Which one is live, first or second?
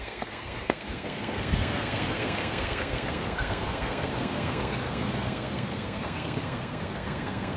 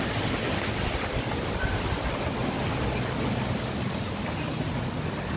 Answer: second